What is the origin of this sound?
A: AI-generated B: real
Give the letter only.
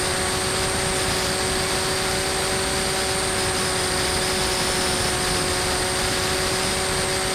B